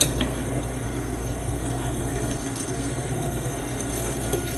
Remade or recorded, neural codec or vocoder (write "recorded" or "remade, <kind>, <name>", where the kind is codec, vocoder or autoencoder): remade, codec, SNAC